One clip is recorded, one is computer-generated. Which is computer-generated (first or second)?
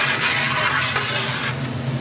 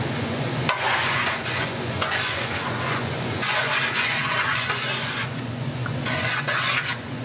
second